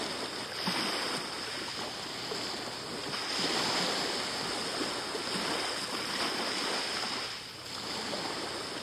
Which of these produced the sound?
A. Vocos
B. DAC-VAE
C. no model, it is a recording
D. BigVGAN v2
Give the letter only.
C